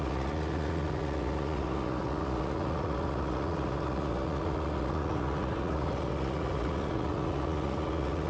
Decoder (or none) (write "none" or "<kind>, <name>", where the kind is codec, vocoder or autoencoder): vocoder, Vocos